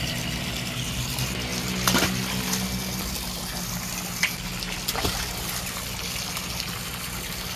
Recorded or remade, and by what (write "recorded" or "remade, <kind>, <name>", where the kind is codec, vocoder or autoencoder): recorded